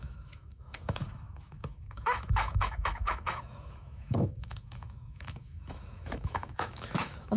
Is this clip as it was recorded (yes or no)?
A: no